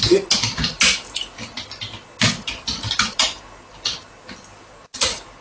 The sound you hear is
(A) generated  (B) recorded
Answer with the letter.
B